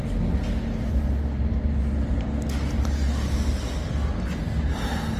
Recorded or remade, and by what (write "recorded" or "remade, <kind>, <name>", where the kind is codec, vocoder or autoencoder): recorded